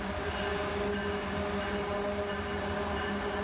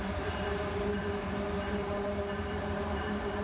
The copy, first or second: second